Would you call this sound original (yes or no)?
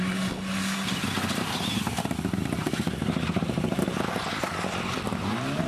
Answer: yes